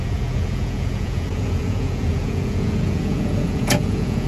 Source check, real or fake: fake